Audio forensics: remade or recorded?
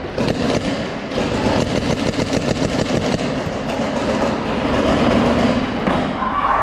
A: recorded